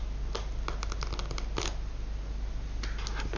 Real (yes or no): yes